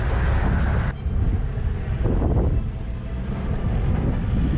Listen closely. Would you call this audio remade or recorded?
recorded